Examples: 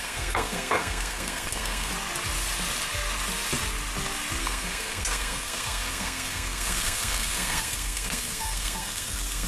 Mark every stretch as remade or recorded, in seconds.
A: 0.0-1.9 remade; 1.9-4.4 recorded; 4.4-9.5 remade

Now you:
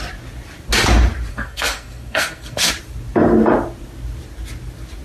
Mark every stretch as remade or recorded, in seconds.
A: 0.0-1.3 recorded; 1.3-2.7 remade; 2.7-5.0 recorded

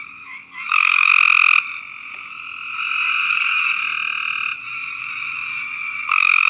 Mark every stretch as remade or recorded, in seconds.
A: 0.0-1.1 remade; 1.1-3.3 recorded; 3.3-3.8 remade; 3.8-4.6 recorded; 4.6-6.5 remade

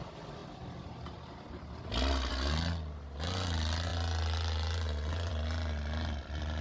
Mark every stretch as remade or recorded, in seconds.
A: 0.0-6.6 recorded

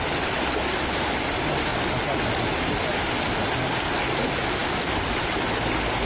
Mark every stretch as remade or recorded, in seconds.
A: 0.0-6.1 recorded

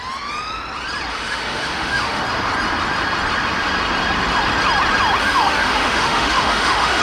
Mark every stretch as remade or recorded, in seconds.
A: 0.0-1.1 recorded; 1.1-2.2 remade; 2.2-5.2 recorded; 5.2-7.0 remade

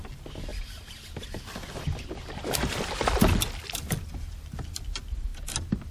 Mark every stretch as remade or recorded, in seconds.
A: 0.0-5.9 recorded

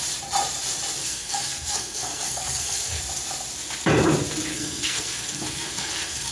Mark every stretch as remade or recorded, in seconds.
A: 0.0-1.0 recorded; 1.0-3.0 remade; 3.0-4.5 recorded; 4.5-6.3 remade